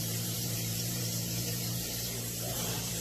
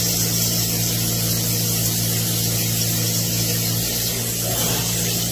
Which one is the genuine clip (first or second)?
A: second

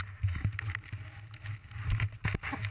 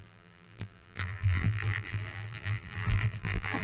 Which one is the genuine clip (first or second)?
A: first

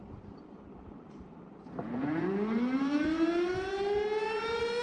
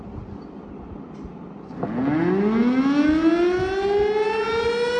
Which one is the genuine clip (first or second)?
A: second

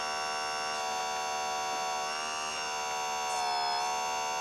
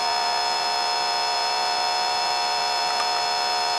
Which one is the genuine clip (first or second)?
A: first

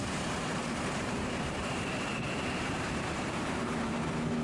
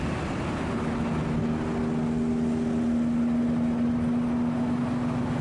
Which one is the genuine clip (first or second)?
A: second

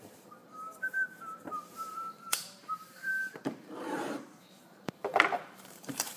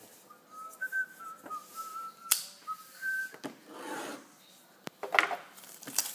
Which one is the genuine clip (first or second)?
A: second